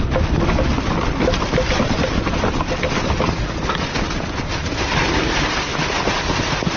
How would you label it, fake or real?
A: real